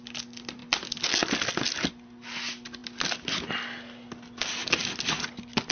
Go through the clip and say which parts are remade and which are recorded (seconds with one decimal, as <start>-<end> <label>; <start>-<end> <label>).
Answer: 0.0-5.7 recorded